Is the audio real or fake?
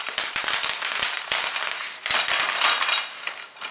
real